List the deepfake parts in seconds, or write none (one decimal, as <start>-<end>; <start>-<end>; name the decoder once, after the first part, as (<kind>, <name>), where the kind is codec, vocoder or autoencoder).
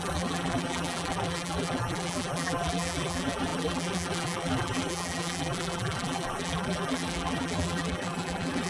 0.0-8.7 (vocoder, BigVGAN v2)